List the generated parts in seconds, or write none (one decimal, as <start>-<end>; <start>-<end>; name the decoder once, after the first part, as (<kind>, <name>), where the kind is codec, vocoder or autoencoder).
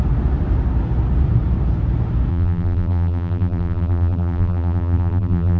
2.3-5.6 (vocoder, BigVGAN v2)